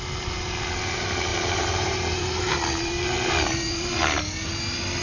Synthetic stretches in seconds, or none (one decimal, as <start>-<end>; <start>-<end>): 1.3-4.2